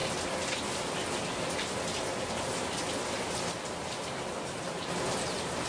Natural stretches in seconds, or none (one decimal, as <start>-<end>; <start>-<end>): 0.0-5.7